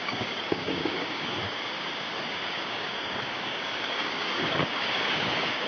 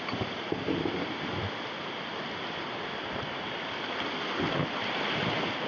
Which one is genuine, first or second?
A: second